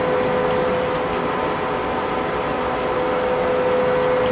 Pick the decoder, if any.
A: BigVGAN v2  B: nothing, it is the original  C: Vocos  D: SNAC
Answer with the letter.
B